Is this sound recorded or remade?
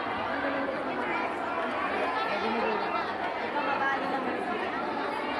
recorded